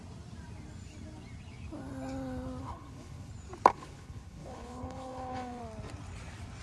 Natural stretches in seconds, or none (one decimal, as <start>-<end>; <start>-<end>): 0.0-2.6; 3.3-3.7; 5.6-6.6